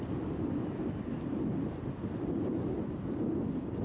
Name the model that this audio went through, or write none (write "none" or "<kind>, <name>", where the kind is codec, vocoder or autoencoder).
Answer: none